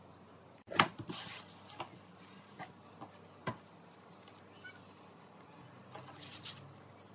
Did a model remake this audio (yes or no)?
no